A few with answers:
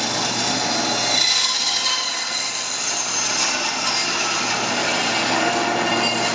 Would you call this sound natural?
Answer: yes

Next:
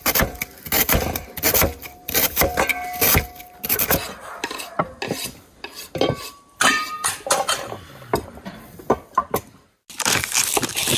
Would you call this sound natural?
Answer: yes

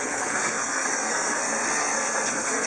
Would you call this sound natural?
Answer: no